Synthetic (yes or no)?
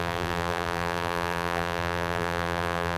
yes